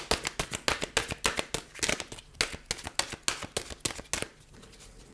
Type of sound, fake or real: real